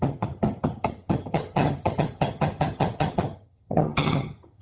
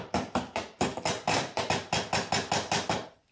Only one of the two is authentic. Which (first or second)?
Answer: second